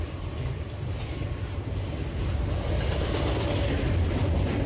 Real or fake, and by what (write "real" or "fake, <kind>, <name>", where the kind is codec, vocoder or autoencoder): real